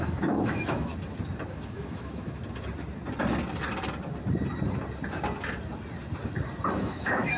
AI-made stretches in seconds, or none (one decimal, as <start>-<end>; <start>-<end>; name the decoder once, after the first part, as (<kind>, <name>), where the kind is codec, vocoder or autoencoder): 0.0-0.9 (autoencoder, DAC-VAE); 1.5-2.4; 6.8-7.4